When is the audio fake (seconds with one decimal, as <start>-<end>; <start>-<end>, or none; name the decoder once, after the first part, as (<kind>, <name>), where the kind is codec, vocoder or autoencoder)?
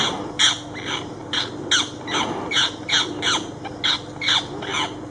none